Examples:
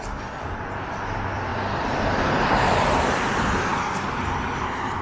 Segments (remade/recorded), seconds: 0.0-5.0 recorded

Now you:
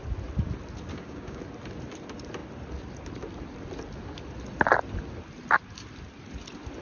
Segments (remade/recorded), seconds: 0.0-0.9 recorded; 0.9-1.4 remade; 1.4-6.8 recorded

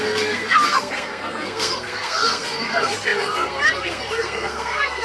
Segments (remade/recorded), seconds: 0.0-5.0 remade